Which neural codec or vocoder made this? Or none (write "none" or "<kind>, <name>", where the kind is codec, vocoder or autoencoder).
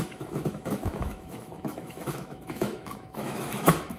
autoencoder, DAC-VAE